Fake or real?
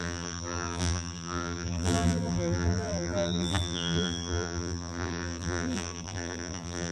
fake